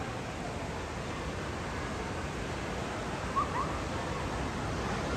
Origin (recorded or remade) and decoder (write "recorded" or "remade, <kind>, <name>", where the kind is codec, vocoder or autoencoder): recorded